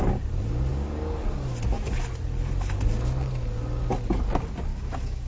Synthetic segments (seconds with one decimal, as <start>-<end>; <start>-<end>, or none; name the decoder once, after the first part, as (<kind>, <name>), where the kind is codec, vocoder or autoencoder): 4.7-5.3 (codec, DAC)